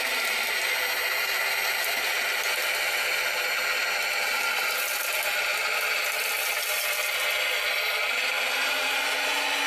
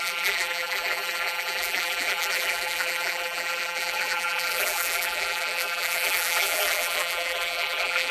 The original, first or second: first